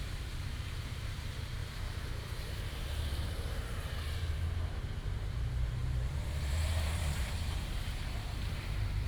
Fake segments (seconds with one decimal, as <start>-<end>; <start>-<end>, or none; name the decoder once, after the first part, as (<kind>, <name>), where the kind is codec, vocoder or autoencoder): 0.0-9.1 (vocoder, BigVGAN v2)